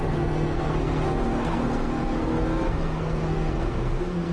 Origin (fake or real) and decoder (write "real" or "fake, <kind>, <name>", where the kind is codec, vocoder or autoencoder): fake, codec, SNAC